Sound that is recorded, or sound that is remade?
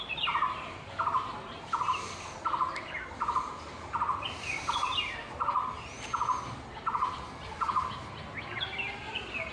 recorded